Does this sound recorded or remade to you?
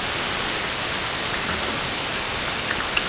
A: recorded